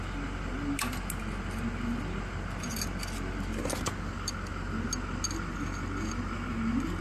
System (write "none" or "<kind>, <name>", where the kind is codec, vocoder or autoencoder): none